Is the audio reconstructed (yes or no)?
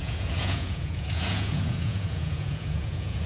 yes